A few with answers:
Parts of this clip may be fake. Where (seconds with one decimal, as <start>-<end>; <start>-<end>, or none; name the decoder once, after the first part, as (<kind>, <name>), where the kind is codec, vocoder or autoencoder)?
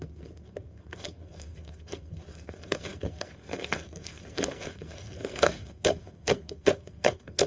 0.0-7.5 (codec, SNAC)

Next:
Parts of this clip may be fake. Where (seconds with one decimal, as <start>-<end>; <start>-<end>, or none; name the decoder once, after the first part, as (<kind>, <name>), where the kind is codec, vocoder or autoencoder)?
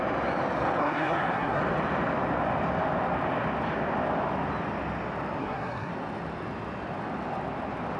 0.8-1.6 (codec, SNAC); 5.4-5.9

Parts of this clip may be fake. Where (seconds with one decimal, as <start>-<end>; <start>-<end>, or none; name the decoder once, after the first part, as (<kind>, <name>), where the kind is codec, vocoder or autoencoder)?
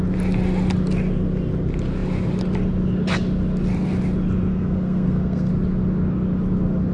4.5-5.5 (codec, SNAC)